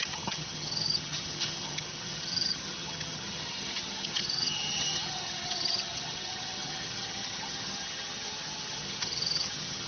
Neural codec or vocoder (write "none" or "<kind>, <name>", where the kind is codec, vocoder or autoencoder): vocoder, HiFi-GAN